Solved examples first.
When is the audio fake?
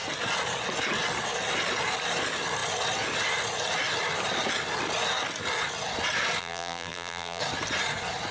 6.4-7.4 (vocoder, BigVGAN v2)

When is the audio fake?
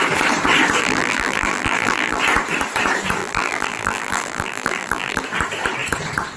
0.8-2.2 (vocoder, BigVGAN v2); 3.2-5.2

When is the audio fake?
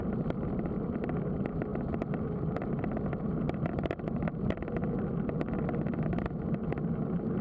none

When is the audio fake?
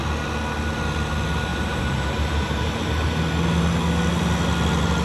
1.5-2.7 (vocoder, BigVGAN v2)